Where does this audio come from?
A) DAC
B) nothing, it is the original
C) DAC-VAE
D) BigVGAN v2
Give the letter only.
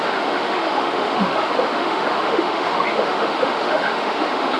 C